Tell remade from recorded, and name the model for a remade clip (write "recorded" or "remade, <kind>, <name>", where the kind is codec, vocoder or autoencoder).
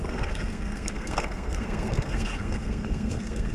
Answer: remade, codec, SNAC